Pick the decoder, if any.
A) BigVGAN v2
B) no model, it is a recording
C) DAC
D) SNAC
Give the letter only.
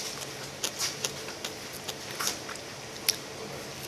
B